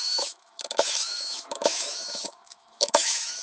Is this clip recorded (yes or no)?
no